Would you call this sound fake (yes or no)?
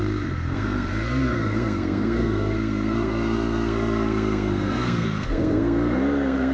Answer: yes